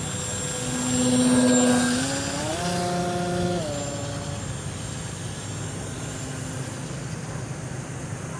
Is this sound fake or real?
real